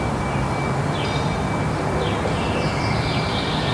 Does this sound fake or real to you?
real